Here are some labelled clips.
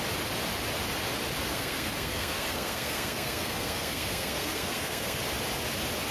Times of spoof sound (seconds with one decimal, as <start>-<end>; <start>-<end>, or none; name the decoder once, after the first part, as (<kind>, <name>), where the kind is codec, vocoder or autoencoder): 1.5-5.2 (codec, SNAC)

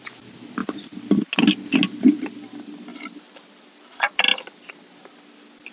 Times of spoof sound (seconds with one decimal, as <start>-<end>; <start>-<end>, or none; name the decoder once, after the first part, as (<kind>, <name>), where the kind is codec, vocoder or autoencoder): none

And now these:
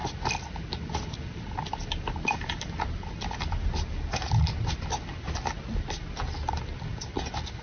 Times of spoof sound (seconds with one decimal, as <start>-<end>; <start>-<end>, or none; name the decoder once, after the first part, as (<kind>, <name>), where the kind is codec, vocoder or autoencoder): none

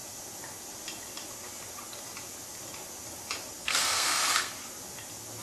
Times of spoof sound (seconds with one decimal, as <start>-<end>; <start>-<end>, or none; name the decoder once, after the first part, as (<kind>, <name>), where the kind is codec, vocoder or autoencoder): 3.6-4.5 (codec, SNAC)

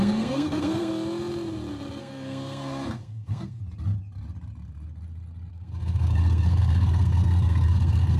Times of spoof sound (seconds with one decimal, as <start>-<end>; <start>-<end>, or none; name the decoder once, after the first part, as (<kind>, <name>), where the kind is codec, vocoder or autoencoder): 0.0-0.9 (codec, SNAC); 2.0-3.6; 5.5-8.2

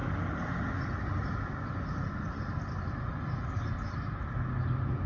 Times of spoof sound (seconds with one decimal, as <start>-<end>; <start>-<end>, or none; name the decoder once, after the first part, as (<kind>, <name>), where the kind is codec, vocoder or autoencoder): none